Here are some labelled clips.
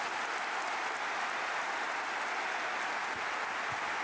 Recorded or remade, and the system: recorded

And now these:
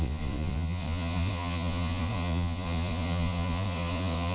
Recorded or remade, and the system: remade, vocoder, Vocos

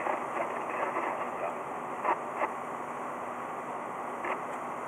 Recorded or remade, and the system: recorded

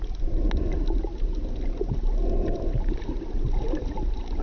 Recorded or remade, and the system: recorded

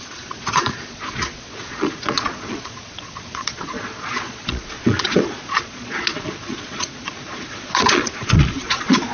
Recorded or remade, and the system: remade, vocoder, Vocos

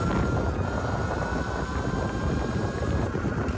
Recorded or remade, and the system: recorded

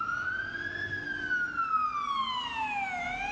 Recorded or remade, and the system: recorded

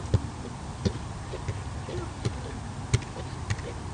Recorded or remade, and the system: recorded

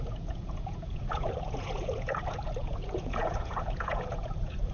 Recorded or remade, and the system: remade, vocoder, Vocos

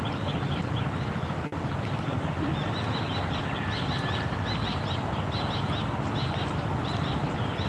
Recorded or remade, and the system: recorded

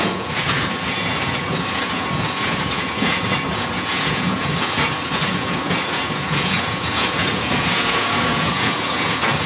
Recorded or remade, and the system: remade, vocoder, Vocos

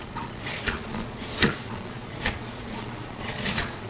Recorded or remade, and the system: remade, vocoder, Vocos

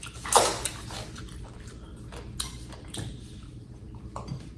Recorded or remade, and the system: recorded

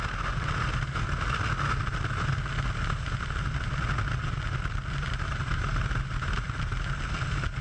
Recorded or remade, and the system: recorded